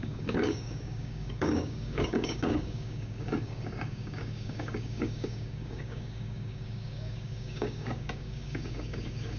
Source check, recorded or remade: remade